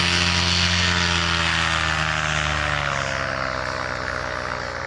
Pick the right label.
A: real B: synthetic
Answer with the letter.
A